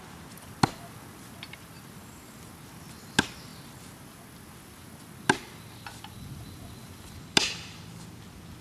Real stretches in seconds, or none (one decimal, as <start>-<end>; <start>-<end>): 0.0-8.6